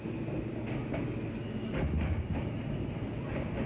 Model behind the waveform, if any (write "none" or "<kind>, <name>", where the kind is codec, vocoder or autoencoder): none